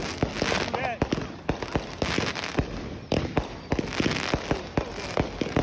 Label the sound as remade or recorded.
recorded